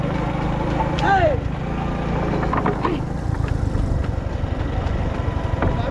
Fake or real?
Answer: real